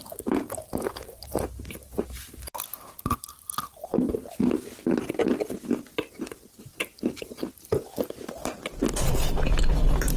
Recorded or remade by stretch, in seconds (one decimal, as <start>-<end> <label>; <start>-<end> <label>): 0.0-1.2 recorded; 1.2-3.2 remade; 3.2-10.2 recorded